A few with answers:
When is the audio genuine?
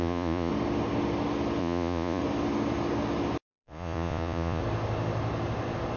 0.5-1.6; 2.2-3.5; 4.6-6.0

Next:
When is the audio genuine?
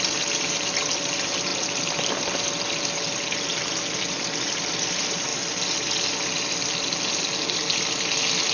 0.0-8.5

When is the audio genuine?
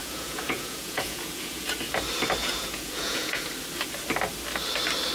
1.8-2.4; 3.5-5.1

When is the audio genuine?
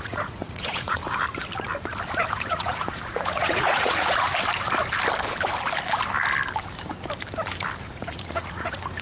1.0-2.3; 4.3-7.8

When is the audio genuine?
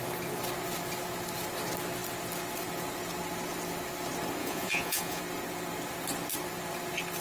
0.0-4.4; 5.2-7.2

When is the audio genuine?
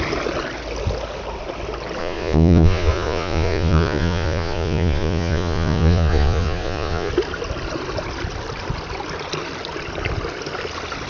0.0-2.0; 7.1-11.1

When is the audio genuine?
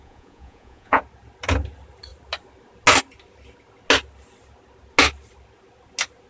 1.0-6.3